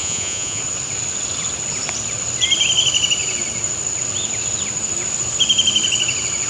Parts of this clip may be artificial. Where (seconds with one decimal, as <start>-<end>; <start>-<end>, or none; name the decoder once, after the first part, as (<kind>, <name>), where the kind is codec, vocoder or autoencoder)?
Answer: 0.0-0.6 (vocoder, Vocos)